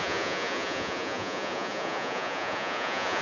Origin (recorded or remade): remade